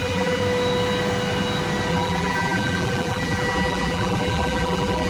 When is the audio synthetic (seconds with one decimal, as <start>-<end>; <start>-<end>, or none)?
0.0-0.4; 1.9-5.1